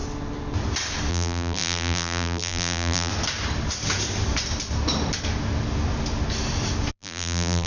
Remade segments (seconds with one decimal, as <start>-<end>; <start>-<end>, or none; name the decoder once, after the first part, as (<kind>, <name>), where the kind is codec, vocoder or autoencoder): 1.1-3.1 (vocoder, BigVGAN v2); 6.9-7.7